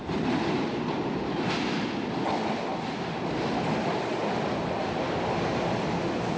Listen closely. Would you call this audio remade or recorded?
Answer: recorded